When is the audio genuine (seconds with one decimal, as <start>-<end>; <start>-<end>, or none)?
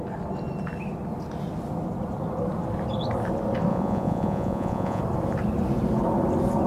0.0-3.7; 5.0-6.7